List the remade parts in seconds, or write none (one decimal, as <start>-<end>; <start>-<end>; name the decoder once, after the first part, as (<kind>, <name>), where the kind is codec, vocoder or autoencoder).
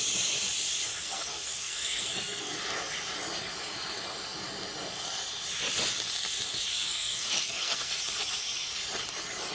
1.0-2.6 (codec, SNAC); 6.7-8.0